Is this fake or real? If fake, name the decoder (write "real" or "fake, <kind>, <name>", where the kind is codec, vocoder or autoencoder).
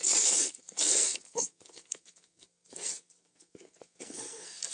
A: fake, codec, SNAC